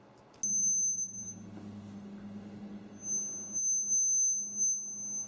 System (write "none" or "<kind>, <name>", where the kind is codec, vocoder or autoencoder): none